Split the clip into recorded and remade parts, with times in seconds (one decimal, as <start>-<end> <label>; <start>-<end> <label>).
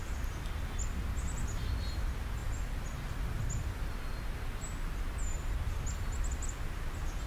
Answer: 0.0-7.3 recorded